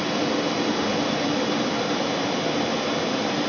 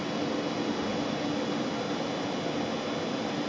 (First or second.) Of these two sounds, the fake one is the first